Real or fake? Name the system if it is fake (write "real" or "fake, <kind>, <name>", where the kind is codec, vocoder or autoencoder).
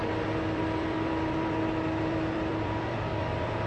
fake, vocoder, BigVGAN v2